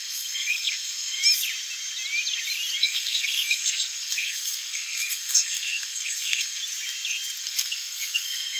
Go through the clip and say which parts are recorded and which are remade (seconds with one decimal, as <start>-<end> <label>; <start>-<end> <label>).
0.0-1.2 remade; 1.2-2.8 recorded; 2.8-6.6 remade; 6.6-7.4 recorded; 7.4-8.6 remade